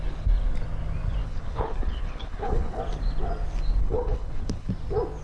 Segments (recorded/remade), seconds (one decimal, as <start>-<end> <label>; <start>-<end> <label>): 0.0-1.2 recorded; 1.2-2.8 remade; 2.8-3.8 recorded; 3.8-4.7 remade; 4.7-5.2 recorded